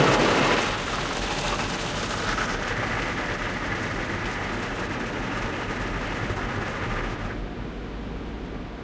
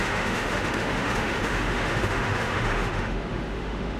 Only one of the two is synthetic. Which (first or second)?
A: second